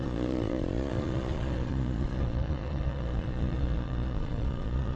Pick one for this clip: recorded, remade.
remade